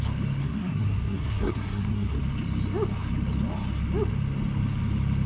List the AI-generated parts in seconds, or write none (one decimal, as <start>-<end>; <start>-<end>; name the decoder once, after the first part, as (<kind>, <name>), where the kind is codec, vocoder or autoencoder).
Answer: 0.4-2.2 (codec, SNAC)